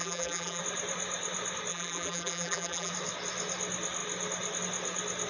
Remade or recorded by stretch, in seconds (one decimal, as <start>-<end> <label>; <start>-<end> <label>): 0.0-0.6 remade; 0.6-1.7 recorded; 1.7-2.9 remade; 2.9-5.3 recorded

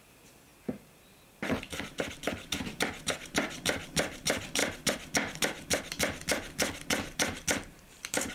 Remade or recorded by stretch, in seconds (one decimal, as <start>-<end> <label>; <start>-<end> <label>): 0.0-4.6 remade; 4.6-7.7 recorded; 7.7-8.3 remade

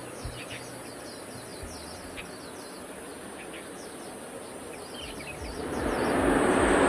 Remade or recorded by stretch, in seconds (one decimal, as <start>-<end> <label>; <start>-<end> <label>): 0.0-1.5 recorded; 1.5-2.2 remade; 2.2-3.1 recorded; 3.1-5.8 remade; 5.8-6.9 recorded

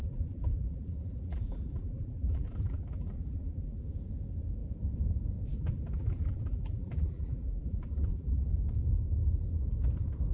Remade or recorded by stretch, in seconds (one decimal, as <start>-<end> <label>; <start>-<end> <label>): 0.0-3.9 remade; 3.9-5.5 recorded; 5.5-8.5 remade; 8.5-10.3 recorded

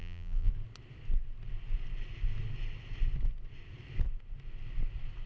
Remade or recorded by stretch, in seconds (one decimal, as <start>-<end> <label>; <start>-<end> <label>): 0.0-0.5 remade; 0.5-5.3 recorded

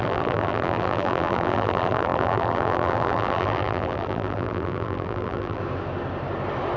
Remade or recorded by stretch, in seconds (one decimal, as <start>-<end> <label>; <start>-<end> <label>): 0.0-5.6 remade; 5.6-6.8 recorded

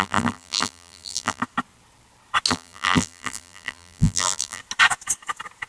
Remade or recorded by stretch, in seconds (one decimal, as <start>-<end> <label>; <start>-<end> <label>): 0.0-1.4 remade; 1.4-2.5 recorded; 2.5-4.6 remade; 4.6-5.7 recorded

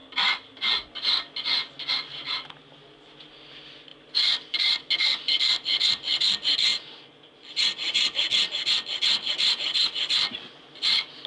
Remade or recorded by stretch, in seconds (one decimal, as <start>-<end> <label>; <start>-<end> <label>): 0.0-11.3 recorded